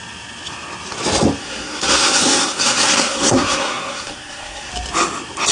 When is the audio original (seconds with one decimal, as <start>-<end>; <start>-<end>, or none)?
0.0-1.4; 4.7-5.5